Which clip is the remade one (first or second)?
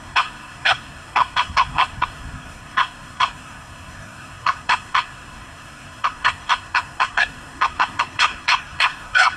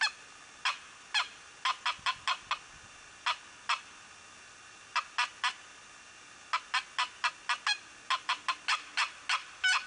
first